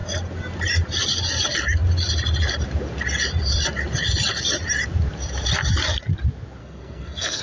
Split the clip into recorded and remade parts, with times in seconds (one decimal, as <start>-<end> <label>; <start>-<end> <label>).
0.0-6.6 recorded; 6.6-7.4 remade